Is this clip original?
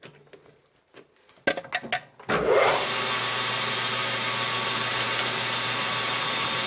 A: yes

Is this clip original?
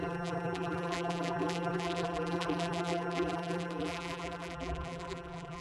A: no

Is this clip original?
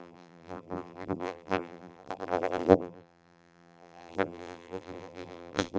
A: no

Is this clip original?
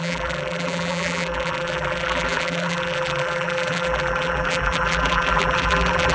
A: no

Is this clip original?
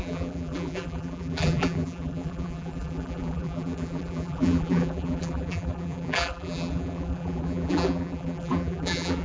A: no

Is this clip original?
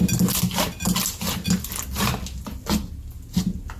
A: yes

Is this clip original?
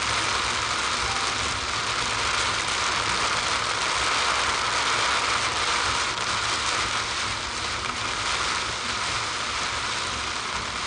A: yes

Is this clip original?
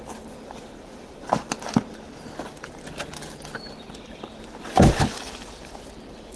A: no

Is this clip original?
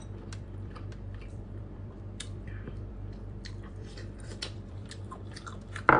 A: no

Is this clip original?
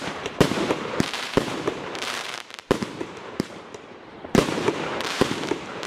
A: no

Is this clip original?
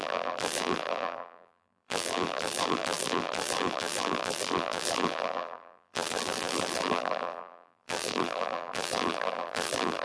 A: no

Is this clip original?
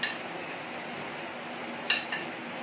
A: yes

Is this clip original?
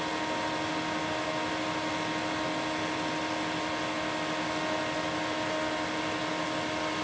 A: yes